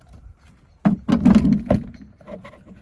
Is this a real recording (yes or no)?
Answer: yes